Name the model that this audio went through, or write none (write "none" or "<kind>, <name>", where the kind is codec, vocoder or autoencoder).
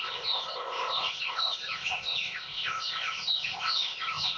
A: codec, ZipCodec